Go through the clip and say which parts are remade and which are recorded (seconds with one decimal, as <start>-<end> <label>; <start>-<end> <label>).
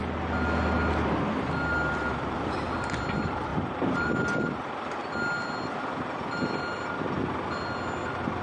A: 0.0-3.5 recorded; 3.5-4.1 remade; 4.1-8.4 recorded